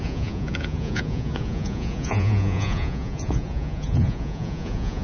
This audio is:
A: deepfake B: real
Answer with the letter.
A